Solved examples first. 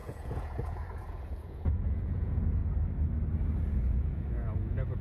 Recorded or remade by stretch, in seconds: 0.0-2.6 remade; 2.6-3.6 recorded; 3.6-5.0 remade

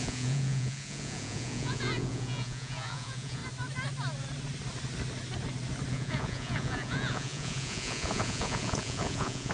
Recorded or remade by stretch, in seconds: 0.0-3.4 remade; 3.4-5.9 recorded; 5.9-9.5 remade

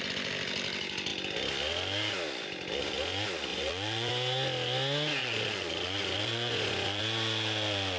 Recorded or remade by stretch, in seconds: 0.0-3.5 recorded; 3.5-4.1 remade; 4.1-5.2 recorded; 5.2-7.0 remade; 7.0-8.0 recorded

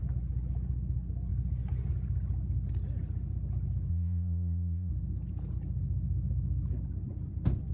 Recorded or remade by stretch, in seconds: 0.0-3.9 recorded; 3.9-4.9 remade; 4.9-7.7 recorded

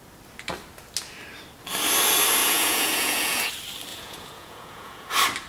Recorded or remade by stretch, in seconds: 0.0-2.4 recorded; 2.4-3.5 remade; 3.5-3.9 recorded; 3.9-5.1 remade; 5.1-5.5 recorded

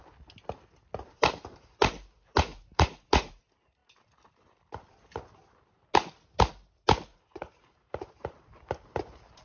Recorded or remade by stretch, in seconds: 0.0-2.5 recorded; 2.5-3.4 remade; 3.4-7.1 recorded; 7.1-8.1 remade; 8.1-9.4 recorded

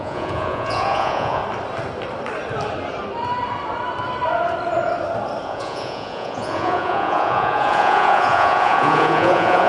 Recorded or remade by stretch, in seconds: 0.0-1.4 remade; 1.4-5.4 recorded; 5.4-9.7 remade

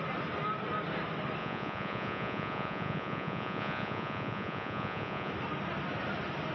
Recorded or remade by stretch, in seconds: 0.0-1.4 recorded; 1.4-5.3 remade; 5.3-6.5 recorded